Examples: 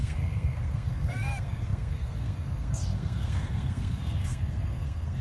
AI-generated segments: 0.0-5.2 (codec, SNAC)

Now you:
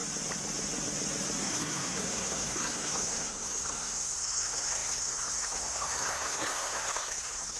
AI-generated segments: 1.4-7.6 (codec, SNAC)

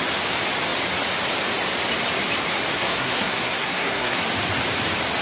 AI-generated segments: 2.7-4.2 (codec, SNAC)

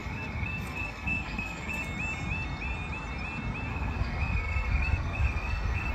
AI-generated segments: 0.0-1.8 (codec, SNAC); 3.7-5.9

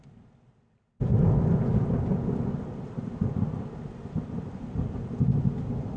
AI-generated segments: none

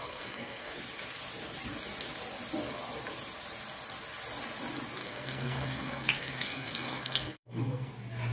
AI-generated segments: 0.0-0.8 (codec, SNAC); 5.0-7.9

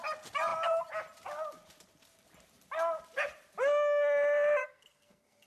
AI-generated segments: 4.6-5.5 (codec, SNAC)